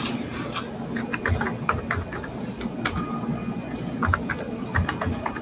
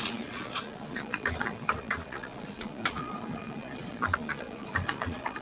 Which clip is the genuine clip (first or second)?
first